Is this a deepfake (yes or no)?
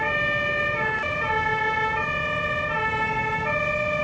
no